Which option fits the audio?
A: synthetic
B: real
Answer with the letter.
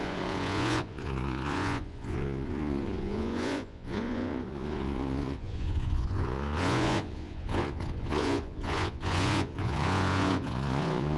A